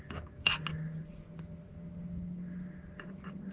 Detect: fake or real real